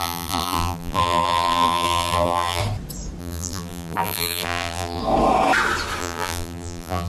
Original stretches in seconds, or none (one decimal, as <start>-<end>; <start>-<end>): 2.6-3.2; 5.0-6.0